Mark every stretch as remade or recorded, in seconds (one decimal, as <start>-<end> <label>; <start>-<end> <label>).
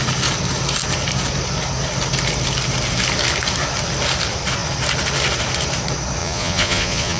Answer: 0.0-6.2 recorded; 6.2-7.2 remade